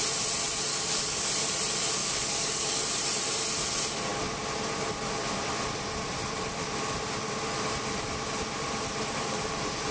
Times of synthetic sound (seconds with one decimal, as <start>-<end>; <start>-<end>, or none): 0.7-1.3; 2.0-2.8